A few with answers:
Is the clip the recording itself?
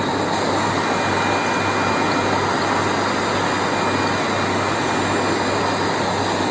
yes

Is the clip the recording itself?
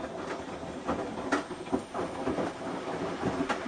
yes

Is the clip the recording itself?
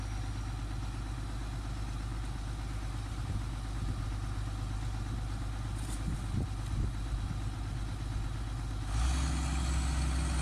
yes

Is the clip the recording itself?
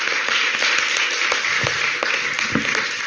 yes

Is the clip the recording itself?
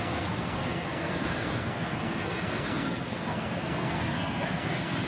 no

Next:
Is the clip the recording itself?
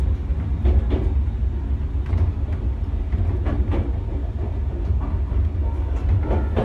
yes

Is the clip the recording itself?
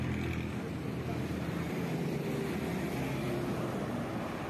yes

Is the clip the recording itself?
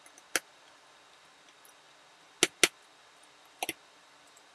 yes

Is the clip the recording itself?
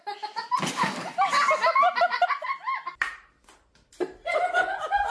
yes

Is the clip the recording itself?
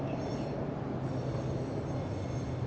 yes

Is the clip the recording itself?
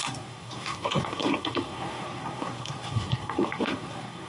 no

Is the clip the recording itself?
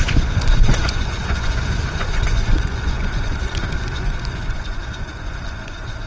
no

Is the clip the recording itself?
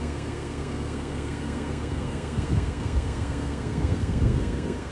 no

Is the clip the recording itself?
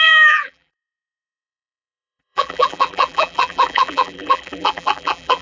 no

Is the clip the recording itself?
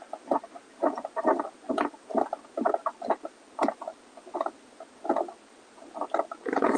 yes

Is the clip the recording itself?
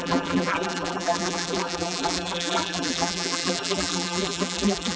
no